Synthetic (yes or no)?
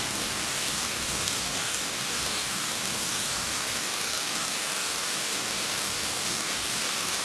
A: yes